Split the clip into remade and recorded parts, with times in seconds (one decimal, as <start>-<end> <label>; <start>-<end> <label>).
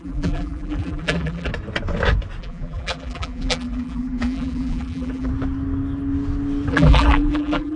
0.0-1.5 remade; 1.5-2.4 recorded; 2.4-5.3 remade; 5.3-6.7 recorded; 6.7-7.8 remade